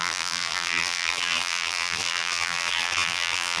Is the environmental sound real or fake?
fake